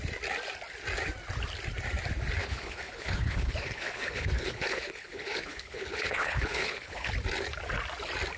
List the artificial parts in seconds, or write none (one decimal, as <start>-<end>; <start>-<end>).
2.4-7.1